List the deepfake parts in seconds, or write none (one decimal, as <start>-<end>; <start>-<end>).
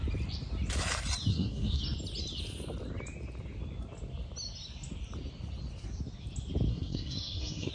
1.3-1.8; 6.7-7.7